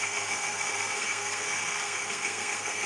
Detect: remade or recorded remade